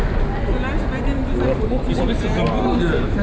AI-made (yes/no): no